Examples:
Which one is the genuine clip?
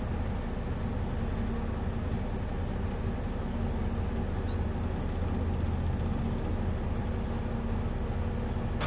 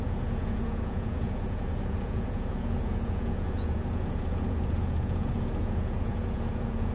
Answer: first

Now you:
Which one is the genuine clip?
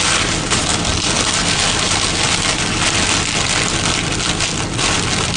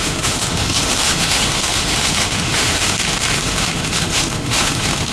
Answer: first